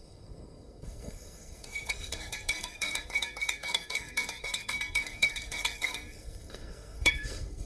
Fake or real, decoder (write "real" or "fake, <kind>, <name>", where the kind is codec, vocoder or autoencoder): fake, codec, SNAC